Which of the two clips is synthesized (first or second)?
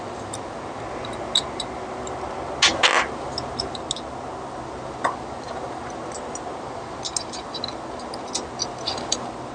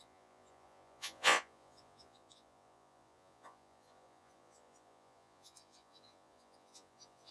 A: second